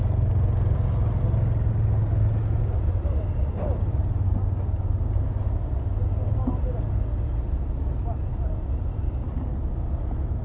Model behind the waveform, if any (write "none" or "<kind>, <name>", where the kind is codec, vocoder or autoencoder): none